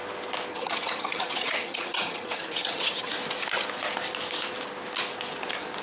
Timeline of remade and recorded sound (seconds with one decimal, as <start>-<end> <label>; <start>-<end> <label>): 0.0-0.5 recorded; 0.5-3.1 remade; 3.1-5.8 recorded